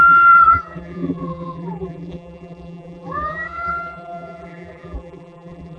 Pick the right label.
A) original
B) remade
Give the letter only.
B